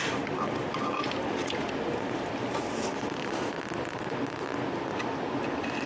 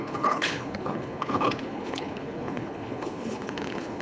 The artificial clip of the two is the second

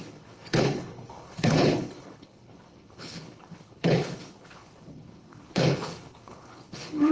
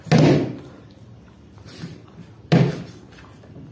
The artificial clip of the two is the first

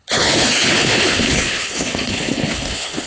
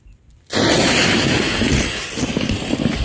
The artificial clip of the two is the first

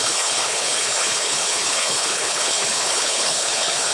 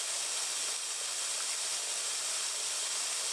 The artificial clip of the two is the first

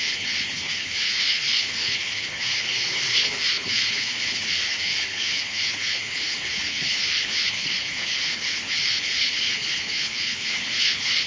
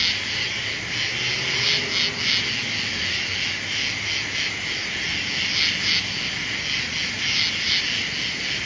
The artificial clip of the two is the first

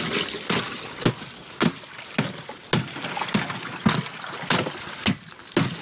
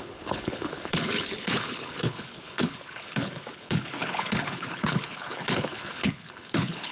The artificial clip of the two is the second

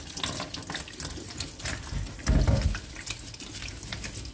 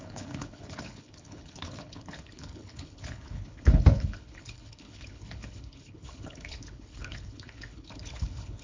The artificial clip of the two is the second